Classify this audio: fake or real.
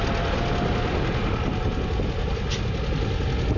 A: real